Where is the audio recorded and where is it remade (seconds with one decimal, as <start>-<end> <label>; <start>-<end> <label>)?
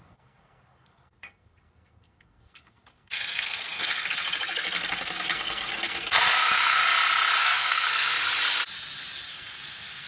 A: 0.0-6.8 remade; 6.8-7.4 recorded; 7.4-8.2 remade; 8.2-9.3 recorded; 9.3-10.1 remade